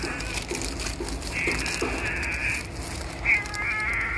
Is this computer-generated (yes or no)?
no